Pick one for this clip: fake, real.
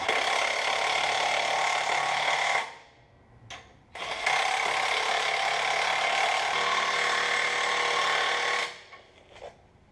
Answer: real